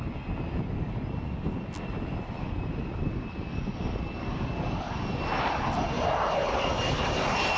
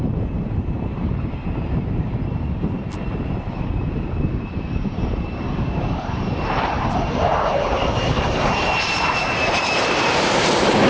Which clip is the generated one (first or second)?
second